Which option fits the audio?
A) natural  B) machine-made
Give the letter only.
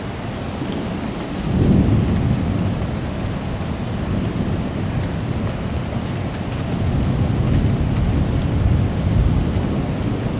A